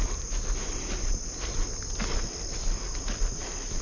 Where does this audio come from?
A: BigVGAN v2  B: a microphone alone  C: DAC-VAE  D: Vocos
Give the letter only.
B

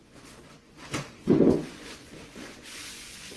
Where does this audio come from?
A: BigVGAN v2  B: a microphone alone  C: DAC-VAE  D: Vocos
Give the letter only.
D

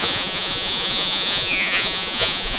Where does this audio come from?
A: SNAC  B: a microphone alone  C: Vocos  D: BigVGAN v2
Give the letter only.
C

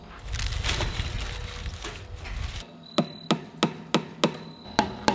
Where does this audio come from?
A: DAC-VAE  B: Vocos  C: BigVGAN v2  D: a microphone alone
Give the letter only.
D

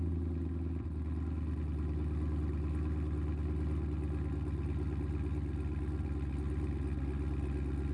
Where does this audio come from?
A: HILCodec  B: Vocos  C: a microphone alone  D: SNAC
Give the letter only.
C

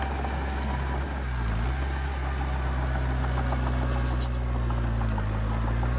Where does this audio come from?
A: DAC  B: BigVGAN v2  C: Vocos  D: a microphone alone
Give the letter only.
D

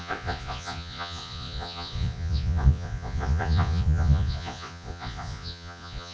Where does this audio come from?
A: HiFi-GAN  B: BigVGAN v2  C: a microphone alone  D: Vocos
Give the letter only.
D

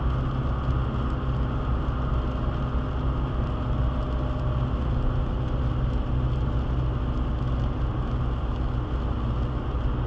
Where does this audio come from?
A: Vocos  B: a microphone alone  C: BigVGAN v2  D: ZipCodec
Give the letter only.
B